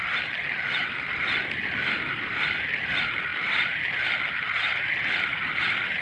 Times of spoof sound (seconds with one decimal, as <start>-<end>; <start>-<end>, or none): none